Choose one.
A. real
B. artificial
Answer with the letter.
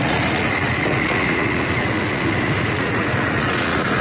B